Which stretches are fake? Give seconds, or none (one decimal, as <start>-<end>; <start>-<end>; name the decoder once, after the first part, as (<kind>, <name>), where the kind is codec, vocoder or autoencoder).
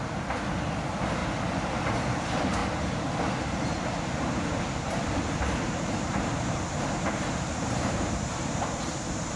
0.0-1.2 (vocoder, BigVGAN v2); 1.8-2.6; 3.4-9.4